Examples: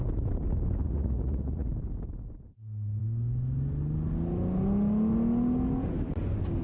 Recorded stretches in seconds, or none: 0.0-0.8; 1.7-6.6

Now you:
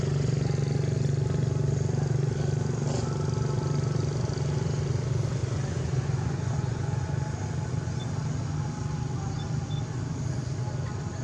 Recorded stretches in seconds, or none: 0.0-5.4; 7.2-11.2

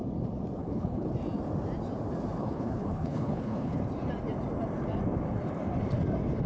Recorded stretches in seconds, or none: 0.0-0.6; 1.1-2.4; 3.8-6.5

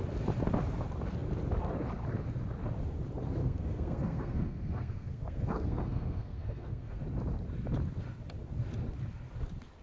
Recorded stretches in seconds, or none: 0.0-3.4; 7.0-9.8

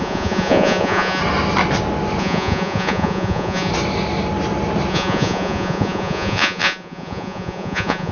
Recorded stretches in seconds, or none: 1.2-2.2; 3.7-4.9

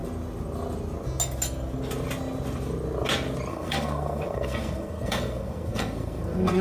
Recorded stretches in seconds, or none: 0.0-3.5

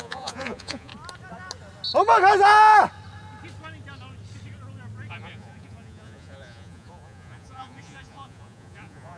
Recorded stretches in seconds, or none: 0.9-5.1

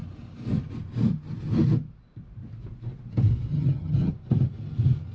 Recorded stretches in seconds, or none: 0.0-3.5; 4.1-5.1